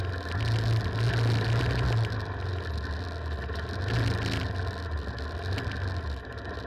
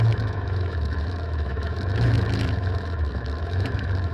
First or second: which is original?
first